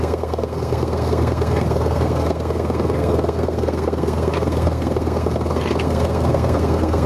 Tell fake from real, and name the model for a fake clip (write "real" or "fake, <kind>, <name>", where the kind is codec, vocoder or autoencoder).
fake, codec, SNAC